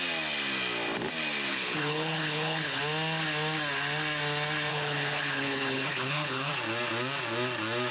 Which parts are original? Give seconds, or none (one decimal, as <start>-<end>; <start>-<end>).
0.0-1.5; 2.8-4.7; 6.5-7.9

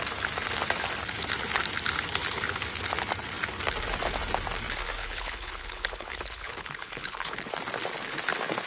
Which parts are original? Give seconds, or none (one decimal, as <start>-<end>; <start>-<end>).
0.0-5.0; 7.5-8.7